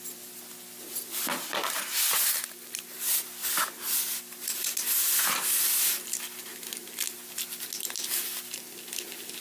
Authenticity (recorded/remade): recorded